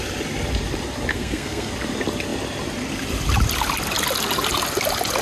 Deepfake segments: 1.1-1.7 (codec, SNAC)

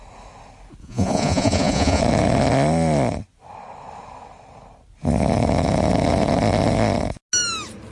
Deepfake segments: 0.8-2.0 (vocoder, Vocos)

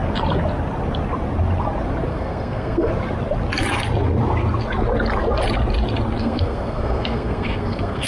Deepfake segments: 2.1-2.9 (codec, SNAC); 6.2-8.1

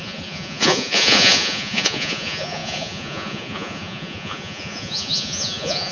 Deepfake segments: 0.0-5.9 (vocoder, Vocos)

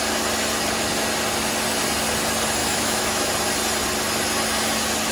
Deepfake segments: 2.6-3.3 (autoencoder, DAC-VAE)

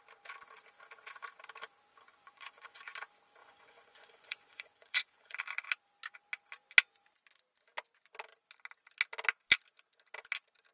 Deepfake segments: 1.9-2.8 (vocoder, Vocos); 3.4-5.4

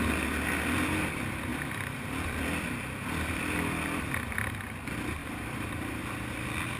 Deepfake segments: 1.5-4.5 (vocoder, BigVGAN v2); 5.2-6.0